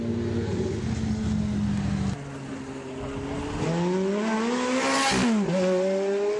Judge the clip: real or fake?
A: real